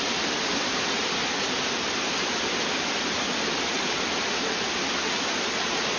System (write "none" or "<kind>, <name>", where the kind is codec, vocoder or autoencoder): none